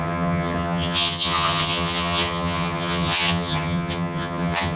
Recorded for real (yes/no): no